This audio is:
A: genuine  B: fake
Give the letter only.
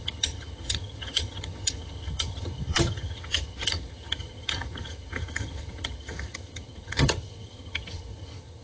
B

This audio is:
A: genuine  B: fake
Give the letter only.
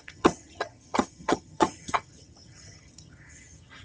B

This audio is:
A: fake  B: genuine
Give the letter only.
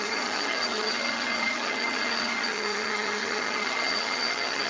A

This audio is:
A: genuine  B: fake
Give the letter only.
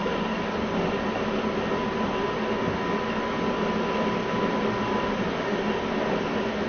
A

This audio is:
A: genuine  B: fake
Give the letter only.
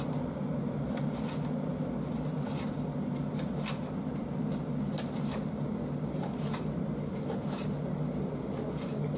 A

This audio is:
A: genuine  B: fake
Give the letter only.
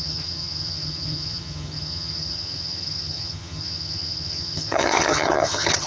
B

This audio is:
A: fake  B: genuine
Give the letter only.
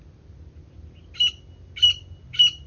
B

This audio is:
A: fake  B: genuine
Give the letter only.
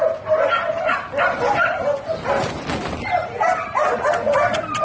B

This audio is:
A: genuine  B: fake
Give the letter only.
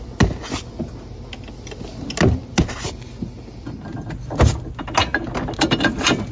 A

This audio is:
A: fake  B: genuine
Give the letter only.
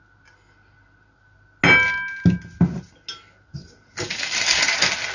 B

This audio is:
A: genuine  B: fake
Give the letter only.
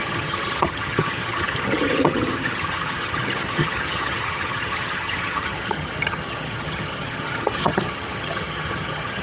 B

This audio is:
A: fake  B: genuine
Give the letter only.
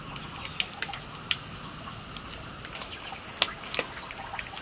B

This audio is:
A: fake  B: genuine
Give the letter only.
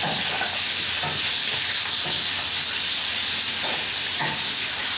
B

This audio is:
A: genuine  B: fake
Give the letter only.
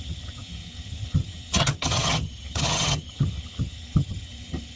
B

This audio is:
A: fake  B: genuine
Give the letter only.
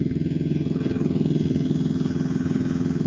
A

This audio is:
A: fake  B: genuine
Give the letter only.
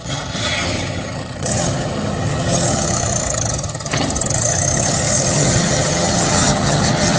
A